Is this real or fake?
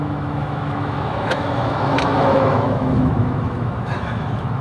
fake